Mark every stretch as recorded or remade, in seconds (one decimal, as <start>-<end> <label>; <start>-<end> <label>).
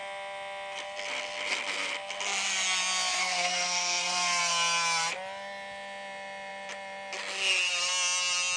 0.0-3.2 recorded; 3.2-4.4 remade; 4.4-8.6 recorded